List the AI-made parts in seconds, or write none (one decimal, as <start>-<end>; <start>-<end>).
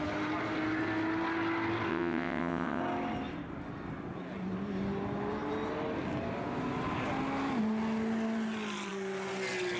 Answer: 1.9-2.8